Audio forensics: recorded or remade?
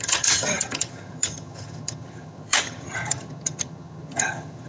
remade